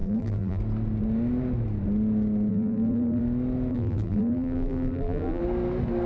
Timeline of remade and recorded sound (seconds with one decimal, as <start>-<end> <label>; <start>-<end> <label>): 0.0-0.6 remade; 0.6-2.5 recorded; 2.5-3.2 remade; 3.2-3.7 recorded; 3.7-5.4 remade; 5.4-6.1 recorded